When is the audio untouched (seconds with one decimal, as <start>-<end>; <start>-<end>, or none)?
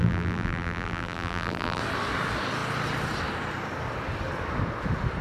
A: 1.8-5.2